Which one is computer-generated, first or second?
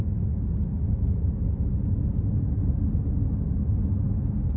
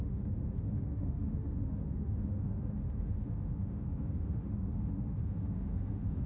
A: second